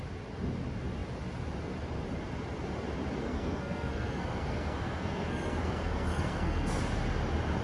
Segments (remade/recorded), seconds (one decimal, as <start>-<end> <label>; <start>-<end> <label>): 0.0-3.2 recorded; 3.2-6.8 remade; 6.8-7.6 recorded